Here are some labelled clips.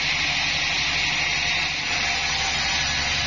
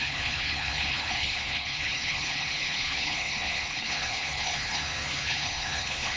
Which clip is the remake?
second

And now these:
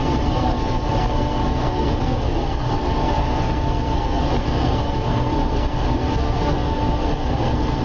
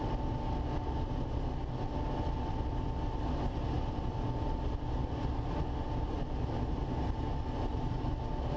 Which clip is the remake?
first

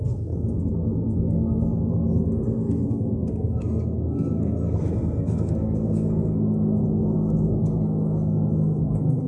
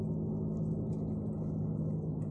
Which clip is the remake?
first